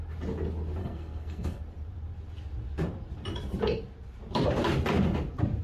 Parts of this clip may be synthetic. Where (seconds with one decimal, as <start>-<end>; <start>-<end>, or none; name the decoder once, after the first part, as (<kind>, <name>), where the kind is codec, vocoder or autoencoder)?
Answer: 0.8-1.6 (codec, SNAC)